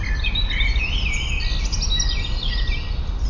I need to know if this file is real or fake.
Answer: real